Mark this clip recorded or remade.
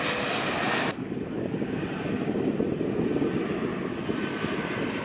recorded